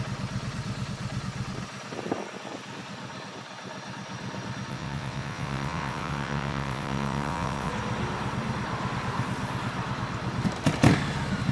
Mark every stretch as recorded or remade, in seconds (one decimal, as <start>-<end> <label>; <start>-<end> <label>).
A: 0.0-4.7 recorded; 4.7-7.7 remade; 7.7-11.5 recorded